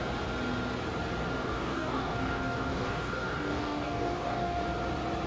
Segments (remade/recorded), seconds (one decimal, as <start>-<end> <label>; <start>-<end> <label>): 0.0-1.4 recorded; 1.4-4.6 remade; 4.6-5.3 recorded